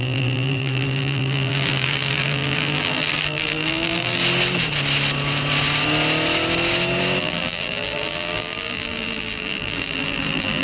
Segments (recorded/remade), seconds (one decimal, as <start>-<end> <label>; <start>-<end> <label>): 0.0-4.2 remade; 4.2-7.2 recorded; 7.2-10.6 remade